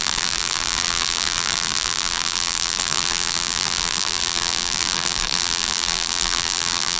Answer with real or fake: fake